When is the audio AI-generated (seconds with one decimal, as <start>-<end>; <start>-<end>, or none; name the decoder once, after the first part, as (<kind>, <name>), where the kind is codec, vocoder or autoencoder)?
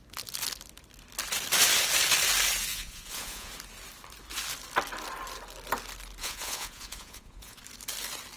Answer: 2.7-3.5 (vocoder, Vocos); 6.2-7.6